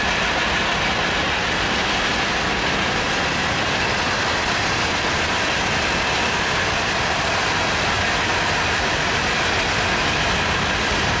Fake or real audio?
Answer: real